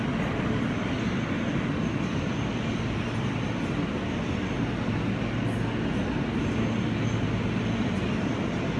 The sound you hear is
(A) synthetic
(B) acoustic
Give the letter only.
B